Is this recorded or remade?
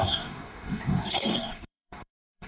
remade